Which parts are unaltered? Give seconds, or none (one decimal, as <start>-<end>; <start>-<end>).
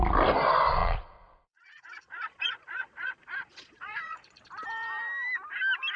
0.0-0.8; 4.4-6.0